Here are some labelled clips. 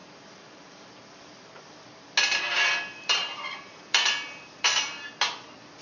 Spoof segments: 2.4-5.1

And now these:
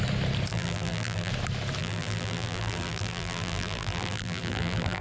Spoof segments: 0.5-1.3; 1.8-5.0

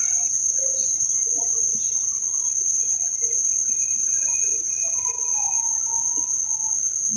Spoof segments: 0.0-5.3

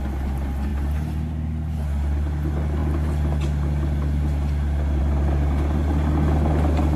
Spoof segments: none

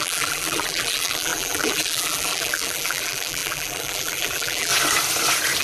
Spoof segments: 0.0-4.7

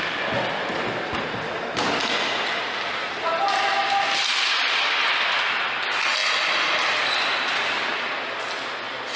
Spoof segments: none

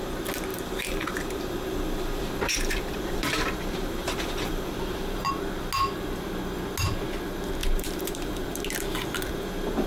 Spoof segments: 0.5-5.3; 7.6-8.6